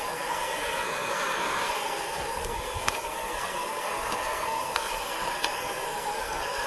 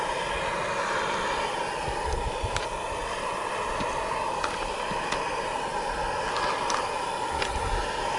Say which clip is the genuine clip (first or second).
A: second